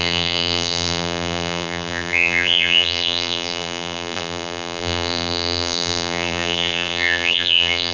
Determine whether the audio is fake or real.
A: fake